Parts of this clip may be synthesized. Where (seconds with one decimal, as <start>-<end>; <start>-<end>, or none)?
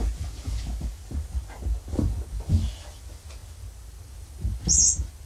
none